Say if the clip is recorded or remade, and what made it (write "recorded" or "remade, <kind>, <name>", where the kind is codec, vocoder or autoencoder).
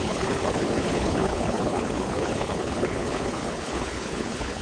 remade, codec, HILCodec